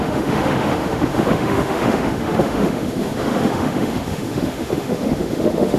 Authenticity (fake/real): fake